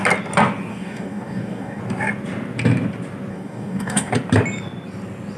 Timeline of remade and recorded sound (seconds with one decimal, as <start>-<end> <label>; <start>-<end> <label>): 0.0-0.7 recorded; 0.7-1.8 remade; 1.8-3.3 recorded; 3.3-4.1 remade; 4.1-5.4 recorded